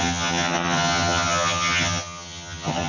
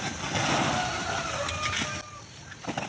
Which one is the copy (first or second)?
first